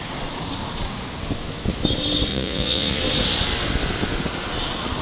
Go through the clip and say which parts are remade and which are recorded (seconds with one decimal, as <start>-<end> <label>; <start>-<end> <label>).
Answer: 0.0-2.3 recorded; 2.3-3.0 remade; 3.0-5.0 recorded